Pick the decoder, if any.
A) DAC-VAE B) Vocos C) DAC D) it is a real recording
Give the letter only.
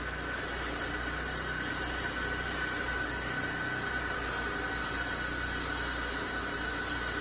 D